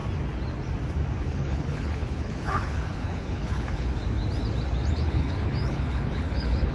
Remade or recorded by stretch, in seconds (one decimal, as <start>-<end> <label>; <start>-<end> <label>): 0.0-1.2 recorded; 1.2-4.0 remade; 4.0-4.9 recorded; 4.9-6.7 remade